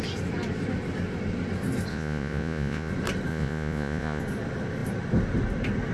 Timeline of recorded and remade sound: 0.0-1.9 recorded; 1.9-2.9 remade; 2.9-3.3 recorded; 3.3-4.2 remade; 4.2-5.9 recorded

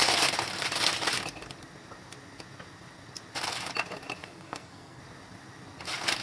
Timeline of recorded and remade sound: 0.0-4.2 recorded; 4.2-5.0 remade; 5.0-6.2 recorded

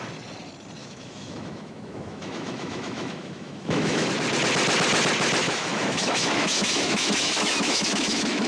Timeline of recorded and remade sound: 0.0-0.8 recorded; 0.8-4.1 remade; 4.1-5.4 recorded; 5.4-8.5 remade

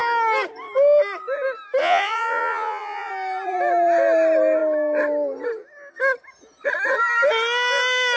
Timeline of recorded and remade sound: 0.0-1.8 recorded; 1.8-3.1 remade; 3.1-8.2 recorded

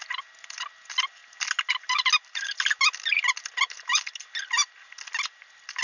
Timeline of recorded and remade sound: 0.0-5.8 recorded

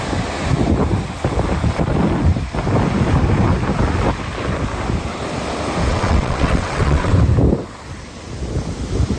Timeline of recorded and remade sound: 0.0-5.9 recorded; 5.9-7.1 remade; 7.1-9.2 recorded